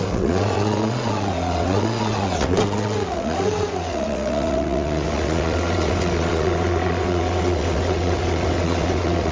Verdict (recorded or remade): remade